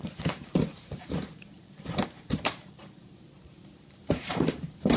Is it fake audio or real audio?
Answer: fake